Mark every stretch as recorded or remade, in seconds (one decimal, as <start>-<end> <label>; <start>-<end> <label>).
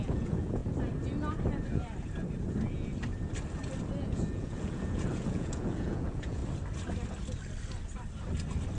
0.0-0.6 remade; 0.6-3.8 recorded; 3.8-6.4 remade; 6.4-8.8 recorded